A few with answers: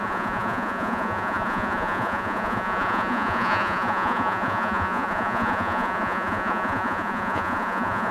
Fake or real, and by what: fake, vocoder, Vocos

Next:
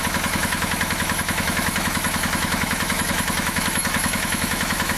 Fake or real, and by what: fake, autoencoder, DAC-VAE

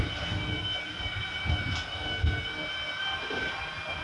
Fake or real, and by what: real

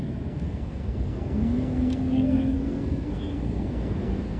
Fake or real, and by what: fake, codec, SNAC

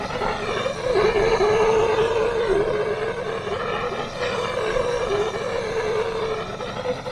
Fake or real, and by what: real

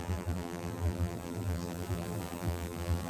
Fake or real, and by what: fake, vocoder, BigVGAN v2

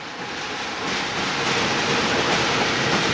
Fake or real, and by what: real